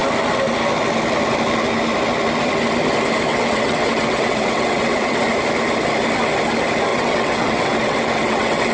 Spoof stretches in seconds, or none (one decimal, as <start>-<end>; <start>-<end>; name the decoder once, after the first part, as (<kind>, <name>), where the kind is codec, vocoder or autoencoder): 3.3-5.2 (vocoder, WaveNeXt); 6.9-8.7